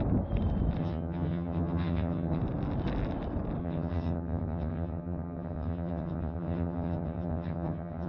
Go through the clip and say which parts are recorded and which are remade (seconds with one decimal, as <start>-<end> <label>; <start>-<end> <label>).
0.0-0.8 recorded; 0.8-2.4 remade; 2.4-3.6 recorded; 3.6-8.1 remade